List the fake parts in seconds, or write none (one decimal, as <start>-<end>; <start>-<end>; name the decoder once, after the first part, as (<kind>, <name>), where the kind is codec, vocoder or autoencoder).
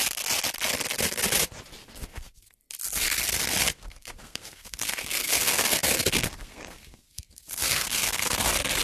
1.8-2.6 (codec, SNAC); 3.6-8.4